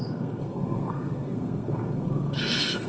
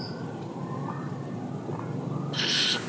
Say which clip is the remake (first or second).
first